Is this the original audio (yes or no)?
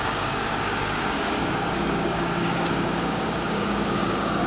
no